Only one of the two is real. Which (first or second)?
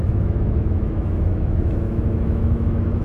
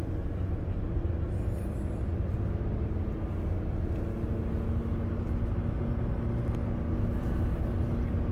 second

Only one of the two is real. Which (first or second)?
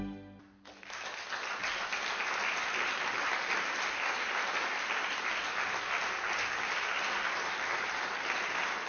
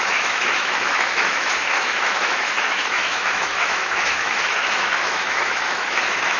first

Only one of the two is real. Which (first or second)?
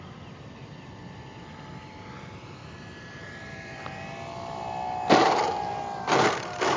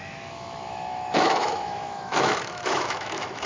first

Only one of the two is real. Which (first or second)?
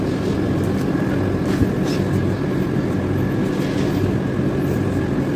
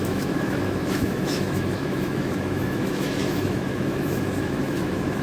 first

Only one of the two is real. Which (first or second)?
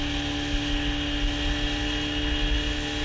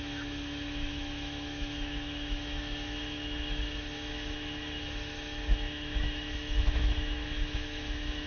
first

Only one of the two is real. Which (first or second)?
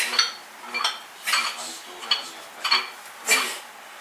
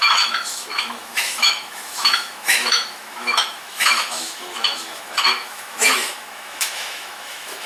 first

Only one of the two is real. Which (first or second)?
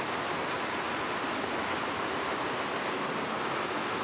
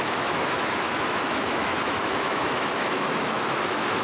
first